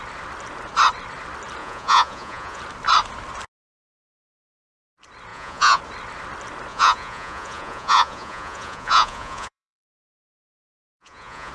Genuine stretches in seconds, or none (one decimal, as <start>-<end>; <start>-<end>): 0.0-1.6; 2.6-5.3; 5.8-6.7